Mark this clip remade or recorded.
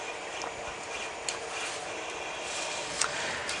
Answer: remade